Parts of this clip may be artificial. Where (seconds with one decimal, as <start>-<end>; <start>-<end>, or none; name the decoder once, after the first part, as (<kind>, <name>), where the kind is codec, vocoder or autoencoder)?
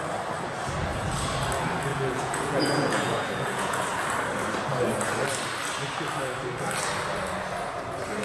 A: 1.9-3.8 (vocoder, Vocos)